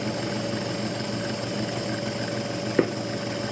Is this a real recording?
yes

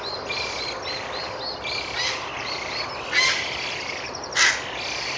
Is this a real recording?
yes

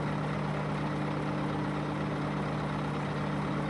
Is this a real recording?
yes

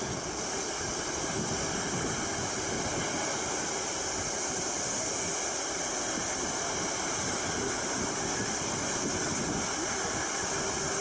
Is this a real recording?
yes